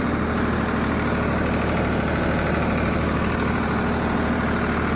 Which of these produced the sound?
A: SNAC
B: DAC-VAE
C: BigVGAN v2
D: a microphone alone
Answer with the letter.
D